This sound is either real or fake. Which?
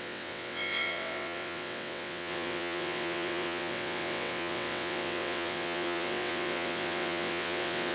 fake